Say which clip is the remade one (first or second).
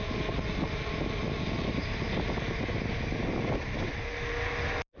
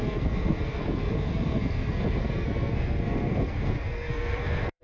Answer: second